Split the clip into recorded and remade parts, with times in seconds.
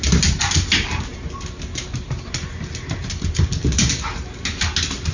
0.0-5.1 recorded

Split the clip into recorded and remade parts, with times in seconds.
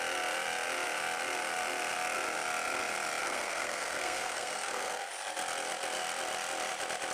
0.0-3.2 recorded; 3.2-5.1 remade; 5.1-7.1 recorded